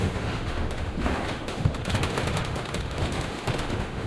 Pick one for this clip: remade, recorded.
remade